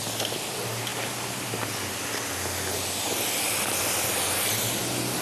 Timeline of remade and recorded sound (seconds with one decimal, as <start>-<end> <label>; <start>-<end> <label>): 0.0-5.2 recorded